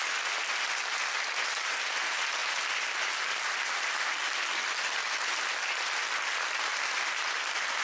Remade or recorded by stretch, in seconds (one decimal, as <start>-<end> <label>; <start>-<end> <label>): 0.0-7.8 recorded